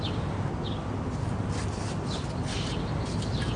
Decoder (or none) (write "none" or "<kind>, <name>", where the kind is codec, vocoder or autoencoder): none